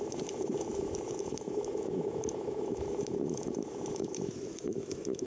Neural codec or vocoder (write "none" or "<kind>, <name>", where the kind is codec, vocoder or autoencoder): autoencoder, DAC-VAE